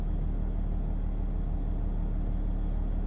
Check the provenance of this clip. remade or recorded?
recorded